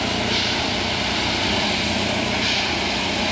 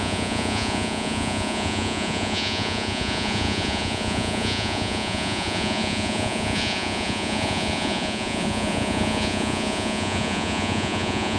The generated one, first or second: second